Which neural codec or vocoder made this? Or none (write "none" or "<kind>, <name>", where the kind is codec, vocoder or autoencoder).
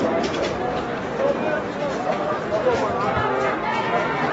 none